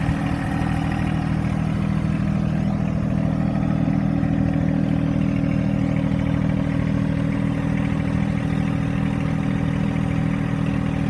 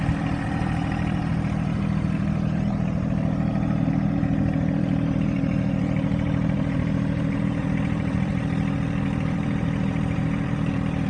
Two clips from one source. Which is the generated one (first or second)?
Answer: second